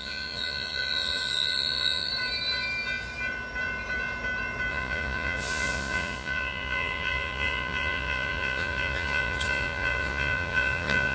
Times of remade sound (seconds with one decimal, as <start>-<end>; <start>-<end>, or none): 0.0-2.1; 4.7-11.1